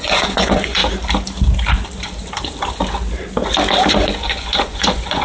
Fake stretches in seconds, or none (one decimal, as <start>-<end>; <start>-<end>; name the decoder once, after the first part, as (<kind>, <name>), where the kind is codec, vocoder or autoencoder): 0.0-0.8 (vocoder, Vocos); 3.9-5.2